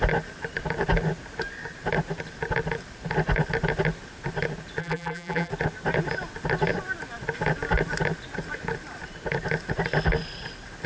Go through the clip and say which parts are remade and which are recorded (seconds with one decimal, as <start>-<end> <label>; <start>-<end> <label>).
0.0-4.8 recorded; 4.8-5.5 remade; 5.5-10.9 recorded